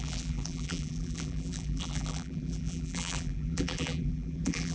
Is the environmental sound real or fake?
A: fake